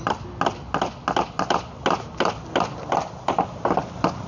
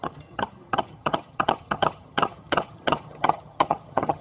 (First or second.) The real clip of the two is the first